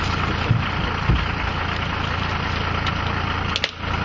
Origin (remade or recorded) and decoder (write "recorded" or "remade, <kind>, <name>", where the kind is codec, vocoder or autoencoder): recorded